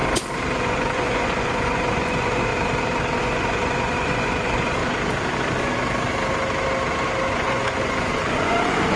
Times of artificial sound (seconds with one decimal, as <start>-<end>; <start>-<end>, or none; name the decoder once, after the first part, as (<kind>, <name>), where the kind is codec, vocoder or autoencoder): 0.6-2.5 (vocoder, Vocos); 3.2-4.8; 7.3-9.0